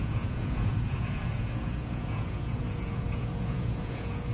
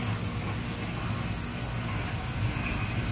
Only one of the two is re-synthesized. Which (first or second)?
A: first